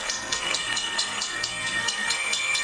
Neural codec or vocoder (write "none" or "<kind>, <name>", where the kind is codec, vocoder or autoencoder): codec, SNAC